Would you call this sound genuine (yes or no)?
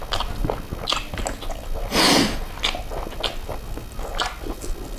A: yes